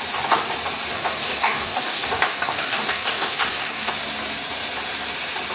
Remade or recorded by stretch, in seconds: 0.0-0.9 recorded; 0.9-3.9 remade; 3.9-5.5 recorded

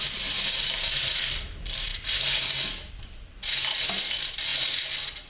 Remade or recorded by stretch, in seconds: 0.0-1.9 remade; 1.9-2.9 recorded; 2.9-4.5 remade; 4.5-5.3 recorded

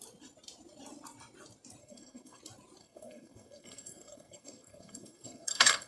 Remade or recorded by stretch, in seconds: 0.0-1.8 recorded; 1.8-2.4 remade; 2.4-2.8 recorded; 2.8-5.9 remade

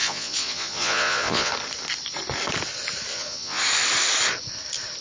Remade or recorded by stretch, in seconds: 0.0-1.5 remade; 1.5-3.1 recorded; 3.1-3.6 remade; 3.6-5.0 recorded

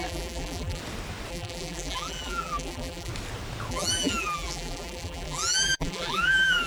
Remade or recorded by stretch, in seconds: 0.0-0.8 remade; 0.8-1.3 recorded; 1.3-3.1 remade; 3.1-3.7 recorded; 3.7-6.7 remade

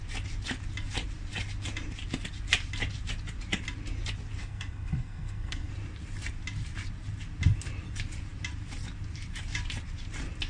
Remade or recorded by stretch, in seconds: 0.0-4.4 recorded; 4.4-5.7 remade; 5.7-10.5 recorded

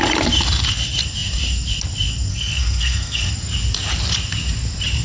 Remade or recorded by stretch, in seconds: 0.0-2.3 recorded; 2.3-3.3 remade; 3.3-5.0 recorded

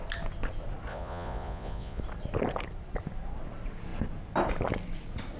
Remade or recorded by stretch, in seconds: 0.0-0.9 recorded; 0.9-2.0 remade; 2.0-5.4 recorded